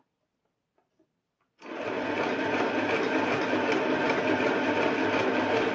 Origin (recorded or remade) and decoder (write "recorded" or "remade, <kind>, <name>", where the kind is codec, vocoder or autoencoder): recorded